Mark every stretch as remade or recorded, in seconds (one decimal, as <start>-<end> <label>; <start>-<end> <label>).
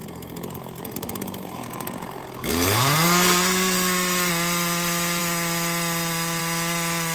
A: 0.0-4.3 remade; 4.3-7.1 recorded